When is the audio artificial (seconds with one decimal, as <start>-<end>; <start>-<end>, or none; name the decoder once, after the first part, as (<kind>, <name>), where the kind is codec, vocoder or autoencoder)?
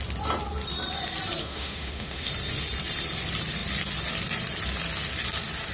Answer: 1.4-2.3 (autoencoder, DAC-VAE)